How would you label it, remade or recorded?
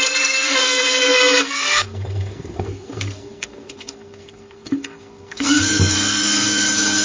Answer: remade